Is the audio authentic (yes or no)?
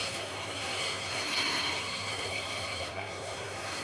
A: no